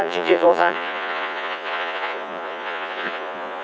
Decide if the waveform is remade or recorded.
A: remade